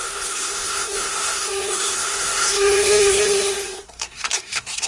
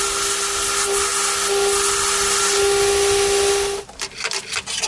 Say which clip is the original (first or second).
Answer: second